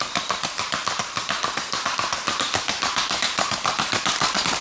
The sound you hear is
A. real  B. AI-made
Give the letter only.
B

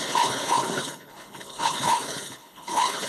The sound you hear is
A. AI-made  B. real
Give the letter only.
A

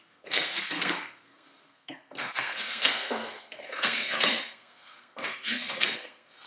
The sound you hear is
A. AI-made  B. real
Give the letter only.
A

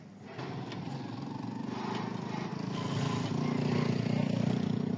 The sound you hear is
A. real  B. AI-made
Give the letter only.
A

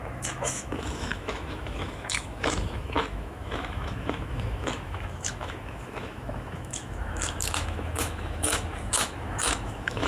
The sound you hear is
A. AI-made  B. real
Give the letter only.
A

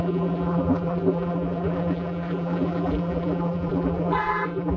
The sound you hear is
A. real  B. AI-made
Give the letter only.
B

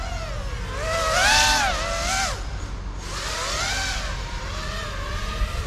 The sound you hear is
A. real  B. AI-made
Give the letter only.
A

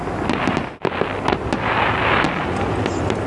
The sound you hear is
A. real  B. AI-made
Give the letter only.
A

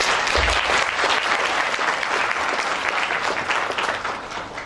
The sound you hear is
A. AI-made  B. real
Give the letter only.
B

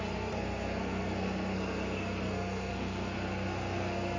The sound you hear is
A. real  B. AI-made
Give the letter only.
B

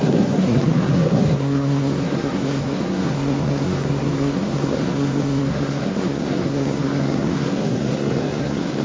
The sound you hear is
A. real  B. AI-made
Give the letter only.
B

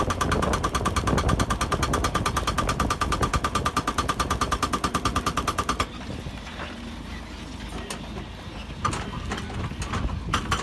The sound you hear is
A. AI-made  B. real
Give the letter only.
B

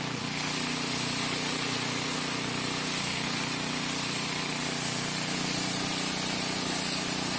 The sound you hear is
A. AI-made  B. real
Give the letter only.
B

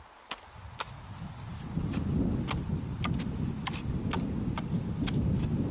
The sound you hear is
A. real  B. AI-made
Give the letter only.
A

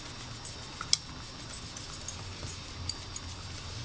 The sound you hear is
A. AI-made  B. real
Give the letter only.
B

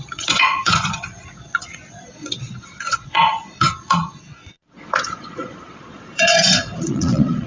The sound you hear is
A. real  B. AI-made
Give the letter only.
B